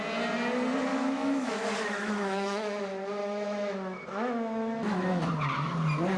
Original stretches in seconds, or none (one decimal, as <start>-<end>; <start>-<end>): 0.0-0.9; 2.8-3.2; 5.2-6.2